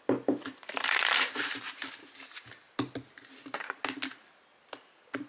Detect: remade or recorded recorded